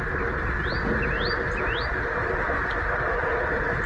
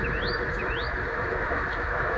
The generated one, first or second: second